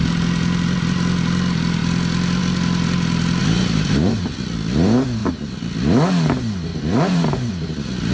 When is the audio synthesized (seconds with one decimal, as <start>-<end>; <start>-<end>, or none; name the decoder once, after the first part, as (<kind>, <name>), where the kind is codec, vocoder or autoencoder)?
3.4-4.2 (vocoder, BigVGAN v2); 6.7-7.5

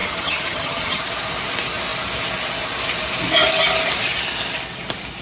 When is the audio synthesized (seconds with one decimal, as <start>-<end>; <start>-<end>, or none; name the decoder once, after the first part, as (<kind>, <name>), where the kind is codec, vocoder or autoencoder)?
0.0-1.0 (vocoder, HiFi-GAN)

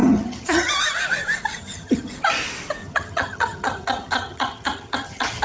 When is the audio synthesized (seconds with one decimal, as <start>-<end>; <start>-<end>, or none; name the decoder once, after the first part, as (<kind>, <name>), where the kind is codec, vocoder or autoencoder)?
0.0-0.7 (vocoder, HiFi-GAN); 1.6-2.1; 2.8-5.4